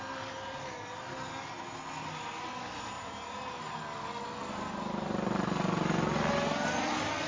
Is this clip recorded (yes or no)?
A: yes